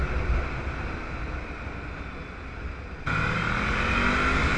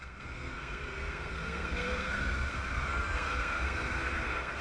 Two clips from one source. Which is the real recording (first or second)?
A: first